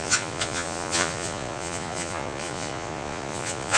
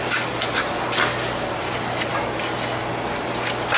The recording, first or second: second